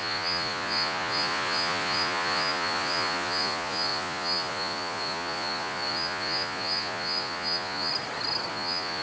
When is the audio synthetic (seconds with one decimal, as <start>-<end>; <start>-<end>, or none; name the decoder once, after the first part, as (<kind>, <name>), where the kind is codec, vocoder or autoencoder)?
0.0-7.9 (vocoder, Vocos); 8.5-9.0